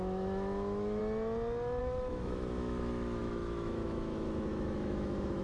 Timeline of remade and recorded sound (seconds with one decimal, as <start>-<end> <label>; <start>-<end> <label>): 0.0-1.0 remade; 1.0-1.8 recorded; 1.8-5.4 remade